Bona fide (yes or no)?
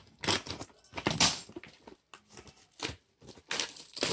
yes